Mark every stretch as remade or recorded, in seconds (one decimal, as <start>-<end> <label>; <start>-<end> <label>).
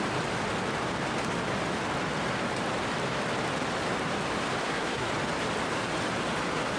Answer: 0.0-4.6 recorded; 4.6-5.1 remade; 5.1-6.8 recorded